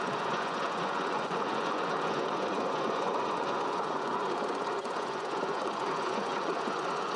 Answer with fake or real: fake